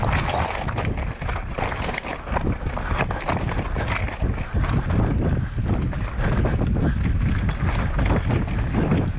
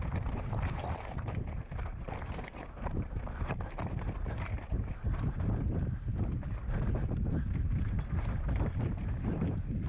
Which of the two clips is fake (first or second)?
second